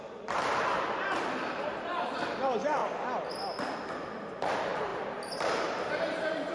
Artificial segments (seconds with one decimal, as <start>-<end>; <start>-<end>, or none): 0.0-2.8; 4.4-6.5